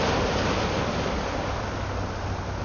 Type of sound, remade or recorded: recorded